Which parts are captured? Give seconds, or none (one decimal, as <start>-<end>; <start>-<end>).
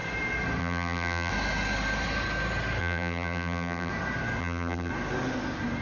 0.0-0.6; 1.3-2.8; 3.9-4.4; 4.9-5.8